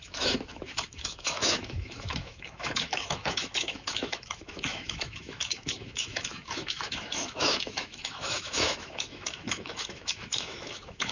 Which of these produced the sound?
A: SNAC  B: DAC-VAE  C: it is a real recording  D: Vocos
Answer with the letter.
B